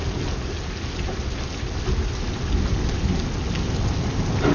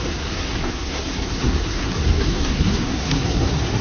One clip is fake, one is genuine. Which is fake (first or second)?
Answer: second